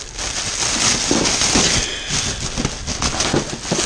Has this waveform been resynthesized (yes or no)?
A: no